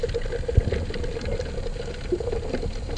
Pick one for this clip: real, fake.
real